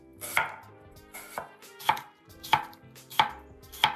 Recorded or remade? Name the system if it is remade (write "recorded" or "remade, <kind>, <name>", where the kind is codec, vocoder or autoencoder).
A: recorded